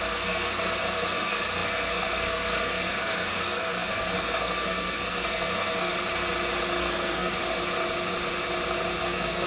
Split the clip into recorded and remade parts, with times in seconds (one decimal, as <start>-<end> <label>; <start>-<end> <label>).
0.0-5.9 remade; 5.9-6.8 recorded; 6.8-7.4 remade; 7.4-9.0 recorded; 9.0-9.5 remade